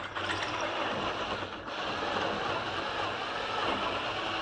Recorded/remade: recorded